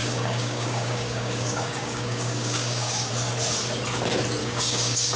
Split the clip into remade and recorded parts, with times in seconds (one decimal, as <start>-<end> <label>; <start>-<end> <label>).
0.0-3.1 remade; 3.1-4.4 recorded; 4.4-5.2 remade